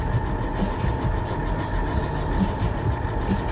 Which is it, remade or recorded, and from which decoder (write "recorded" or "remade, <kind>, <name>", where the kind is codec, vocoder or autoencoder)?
recorded